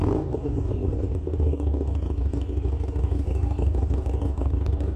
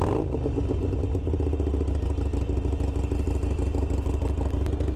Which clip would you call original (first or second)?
second